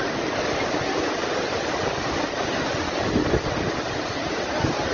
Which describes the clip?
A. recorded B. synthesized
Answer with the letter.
A